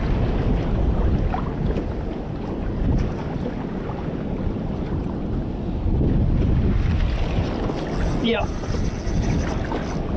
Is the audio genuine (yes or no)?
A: yes